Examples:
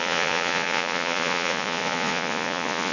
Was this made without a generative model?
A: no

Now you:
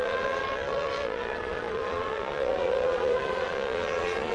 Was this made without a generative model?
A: no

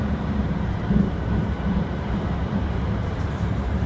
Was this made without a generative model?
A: no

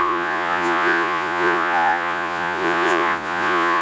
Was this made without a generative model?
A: no